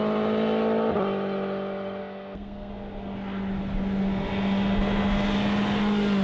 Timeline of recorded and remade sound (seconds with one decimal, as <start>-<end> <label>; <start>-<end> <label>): 0.0-2.0 recorded; 2.0-2.7 remade; 2.7-6.2 recorded